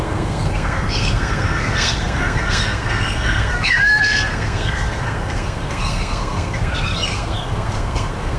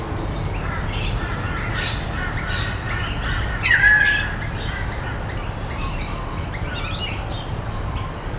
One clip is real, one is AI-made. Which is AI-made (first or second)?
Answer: first